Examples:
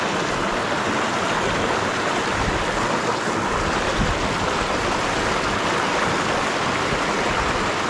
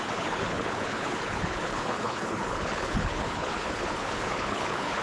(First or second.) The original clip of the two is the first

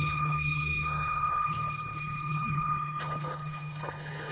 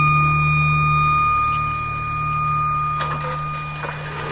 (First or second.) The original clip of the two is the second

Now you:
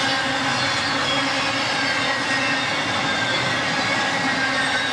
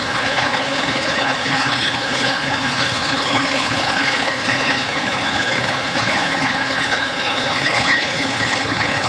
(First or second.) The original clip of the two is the first